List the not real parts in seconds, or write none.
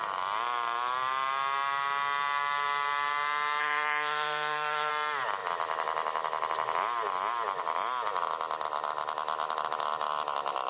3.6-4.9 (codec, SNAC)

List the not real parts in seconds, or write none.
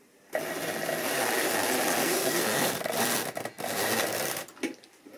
2.0-2.7 (codec, SNAC)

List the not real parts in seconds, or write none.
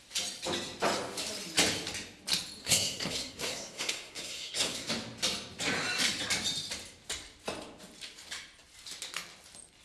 2.6-4.9 (codec, SNAC)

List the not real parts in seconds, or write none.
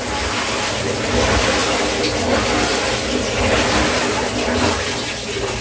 none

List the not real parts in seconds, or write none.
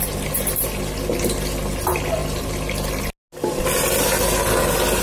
none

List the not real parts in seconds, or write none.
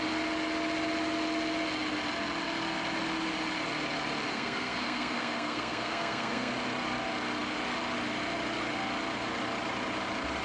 4.3-6.5 (codec, SNAC)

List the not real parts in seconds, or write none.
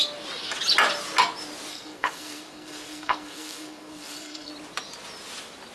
1.7-4.5 (codec, SNAC)